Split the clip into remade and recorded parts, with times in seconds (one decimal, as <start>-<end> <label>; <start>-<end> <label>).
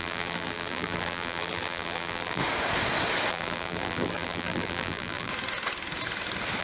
0.0-2.4 remade; 2.4-3.3 recorded; 3.3-5.3 remade; 5.3-6.6 recorded